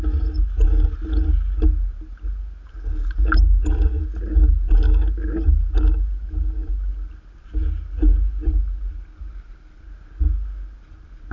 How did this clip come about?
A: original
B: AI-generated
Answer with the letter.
A